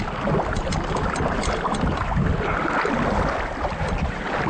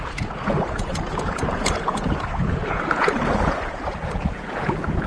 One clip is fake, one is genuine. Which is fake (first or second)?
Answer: second